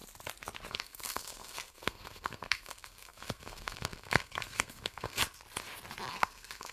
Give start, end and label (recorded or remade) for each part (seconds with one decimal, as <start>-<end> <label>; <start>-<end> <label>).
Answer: 0.0-0.7 recorded; 0.7-5.2 remade; 5.2-6.1 recorded; 6.1-6.7 remade